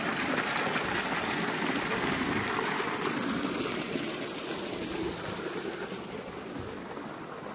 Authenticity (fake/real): real